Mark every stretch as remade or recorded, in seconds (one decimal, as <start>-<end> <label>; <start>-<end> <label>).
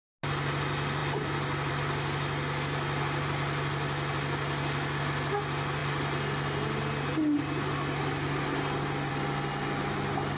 0.0-10.4 recorded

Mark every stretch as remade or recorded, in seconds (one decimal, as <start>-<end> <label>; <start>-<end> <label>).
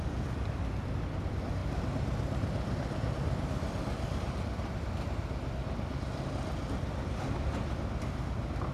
0.0-8.7 recorded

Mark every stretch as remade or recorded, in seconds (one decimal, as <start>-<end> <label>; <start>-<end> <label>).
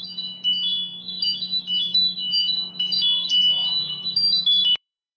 0.0-5.2 remade